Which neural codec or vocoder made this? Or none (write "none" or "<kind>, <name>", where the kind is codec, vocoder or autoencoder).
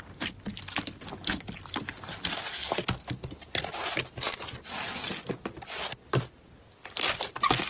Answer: none